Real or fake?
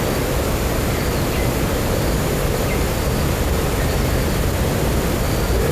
real